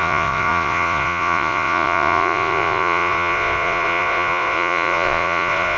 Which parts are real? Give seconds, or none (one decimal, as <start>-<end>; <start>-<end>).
none